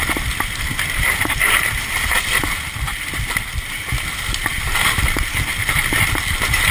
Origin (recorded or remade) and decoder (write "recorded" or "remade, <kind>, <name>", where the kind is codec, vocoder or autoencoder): recorded